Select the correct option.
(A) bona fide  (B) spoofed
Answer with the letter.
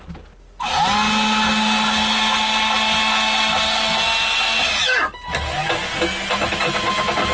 A